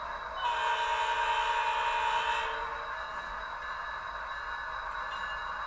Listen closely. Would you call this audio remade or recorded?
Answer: recorded